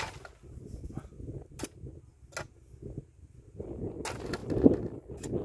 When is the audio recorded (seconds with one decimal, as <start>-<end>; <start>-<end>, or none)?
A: 0.0-5.4